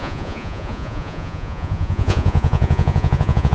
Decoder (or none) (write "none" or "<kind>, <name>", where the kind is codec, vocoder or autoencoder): vocoder, Vocos